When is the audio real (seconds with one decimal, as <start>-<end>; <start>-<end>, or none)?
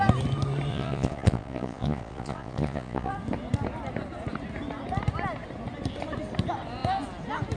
0.0-0.7; 3.1-7.6